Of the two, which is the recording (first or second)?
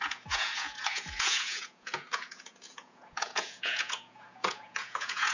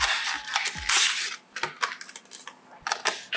second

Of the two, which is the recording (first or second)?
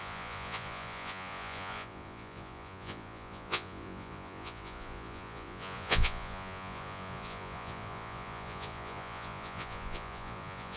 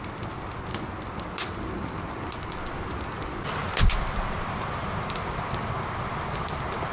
second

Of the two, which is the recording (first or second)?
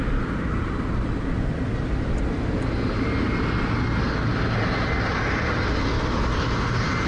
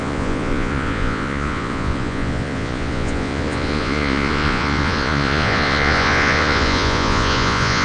first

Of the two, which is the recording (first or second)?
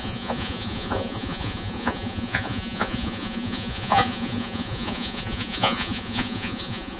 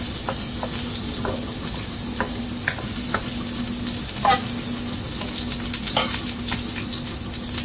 second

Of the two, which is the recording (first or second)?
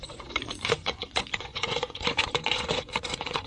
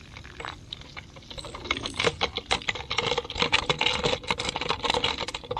second